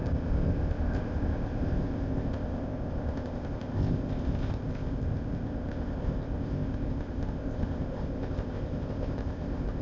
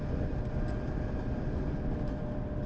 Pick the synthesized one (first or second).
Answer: first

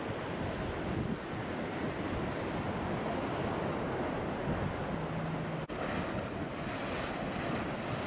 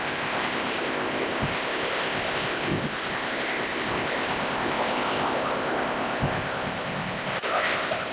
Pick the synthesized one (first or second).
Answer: second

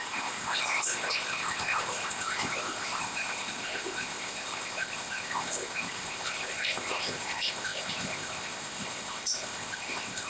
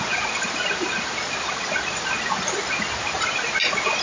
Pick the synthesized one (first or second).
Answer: first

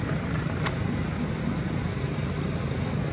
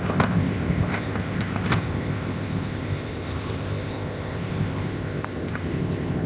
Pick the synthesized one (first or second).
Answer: second